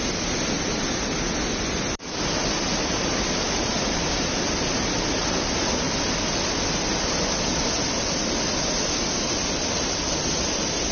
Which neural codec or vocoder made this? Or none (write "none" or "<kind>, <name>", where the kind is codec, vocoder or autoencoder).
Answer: none